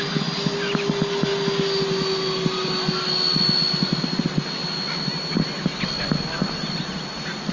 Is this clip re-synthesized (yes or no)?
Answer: no